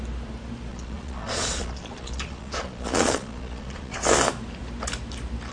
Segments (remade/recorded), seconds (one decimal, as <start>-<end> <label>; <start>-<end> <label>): 0.0-0.7 recorded; 0.7-4.0 remade; 4.0-5.5 recorded